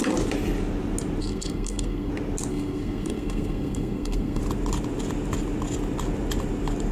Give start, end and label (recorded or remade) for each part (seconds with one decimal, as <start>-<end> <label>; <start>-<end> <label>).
0.0-1.2 recorded; 1.2-2.1 remade; 2.1-2.5 recorded; 2.5-4.4 remade; 4.4-6.9 recorded